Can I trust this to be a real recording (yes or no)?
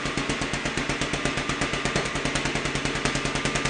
yes